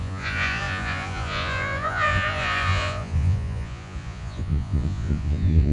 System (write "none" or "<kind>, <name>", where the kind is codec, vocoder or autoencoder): vocoder, Vocos